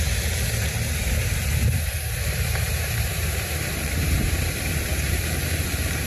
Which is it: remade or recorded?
remade